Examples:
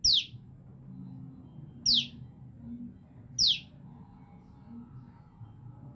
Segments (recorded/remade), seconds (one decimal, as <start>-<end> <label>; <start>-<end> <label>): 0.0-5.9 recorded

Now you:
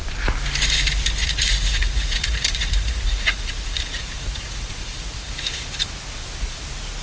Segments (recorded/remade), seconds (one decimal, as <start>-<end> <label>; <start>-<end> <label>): 0.0-1.2 recorded; 1.2-5.4 remade; 5.4-7.0 recorded

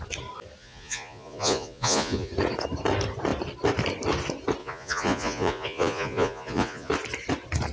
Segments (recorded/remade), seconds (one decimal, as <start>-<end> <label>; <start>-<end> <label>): 0.0-0.6 recorded; 0.6-2.3 remade; 2.3-4.6 recorded; 4.6-6.9 remade; 6.9-7.7 recorded

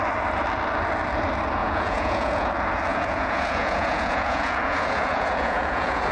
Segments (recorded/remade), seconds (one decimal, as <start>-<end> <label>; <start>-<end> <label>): 0.0-1.6 recorded; 1.6-2.5 remade; 2.5-2.9 recorded; 2.9-6.1 remade

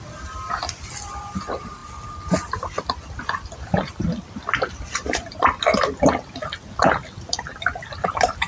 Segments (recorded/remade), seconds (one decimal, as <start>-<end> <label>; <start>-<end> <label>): 0.0-8.5 recorded

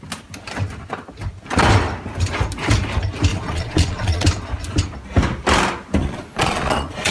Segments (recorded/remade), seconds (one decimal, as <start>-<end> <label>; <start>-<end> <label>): 0.0-3.3 recorded; 3.3-4.2 remade; 4.2-6.0 recorded; 6.0-7.1 remade

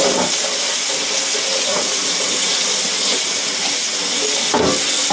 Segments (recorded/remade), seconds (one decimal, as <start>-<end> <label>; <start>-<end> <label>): 0.0-1.7 recorded; 1.7-2.6 remade; 2.6-5.1 recorded

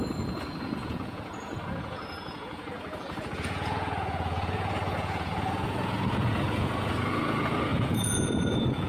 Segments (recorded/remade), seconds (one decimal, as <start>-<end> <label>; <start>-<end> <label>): 0.0-8.9 remade